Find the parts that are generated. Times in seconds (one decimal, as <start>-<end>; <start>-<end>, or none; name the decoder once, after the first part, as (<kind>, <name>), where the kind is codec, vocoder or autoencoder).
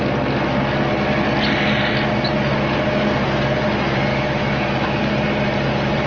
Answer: 4.1-5.0 (autoencoder, DAC-VAE)